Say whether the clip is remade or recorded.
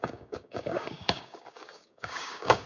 remade